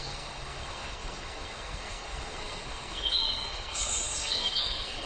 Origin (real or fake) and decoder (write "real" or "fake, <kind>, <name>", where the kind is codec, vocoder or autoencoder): fake, codec, SNAC